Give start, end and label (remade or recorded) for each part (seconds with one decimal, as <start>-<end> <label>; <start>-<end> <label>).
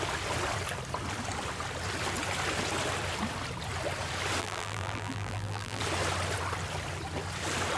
0.0-4.4 recorded; 4.4-5.8 remade; 5.8-7.8 recorded